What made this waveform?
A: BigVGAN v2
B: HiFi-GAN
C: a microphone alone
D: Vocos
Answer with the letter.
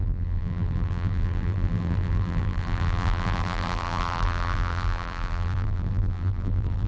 A